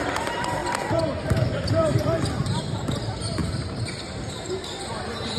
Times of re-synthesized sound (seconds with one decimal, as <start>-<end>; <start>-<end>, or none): 0.0-0.6; 1.2-5.4